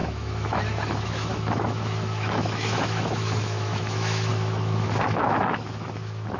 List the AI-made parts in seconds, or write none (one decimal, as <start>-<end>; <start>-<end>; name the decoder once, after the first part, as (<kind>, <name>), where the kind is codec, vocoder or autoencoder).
0.0-6.4 (autoencoder, DAC-VAE)